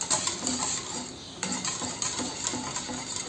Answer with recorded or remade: recorded